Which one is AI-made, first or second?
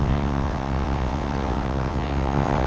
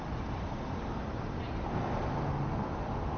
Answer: first